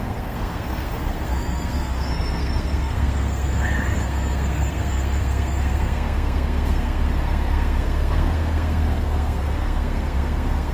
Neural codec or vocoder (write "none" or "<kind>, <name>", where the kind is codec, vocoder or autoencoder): codec, SNAC